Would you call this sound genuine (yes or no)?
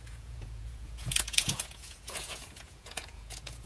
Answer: no